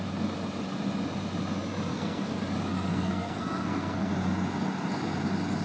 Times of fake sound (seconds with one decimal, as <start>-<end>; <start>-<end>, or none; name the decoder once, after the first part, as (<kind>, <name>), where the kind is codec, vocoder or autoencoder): 1.9-2.4 (codec, SNAC); 2.9-4.1